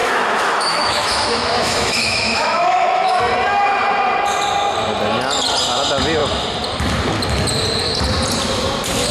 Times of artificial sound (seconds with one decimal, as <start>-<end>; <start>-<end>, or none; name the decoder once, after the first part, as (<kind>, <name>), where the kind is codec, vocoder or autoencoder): 0.0-3.2 (autoencoder, DAC-VAE)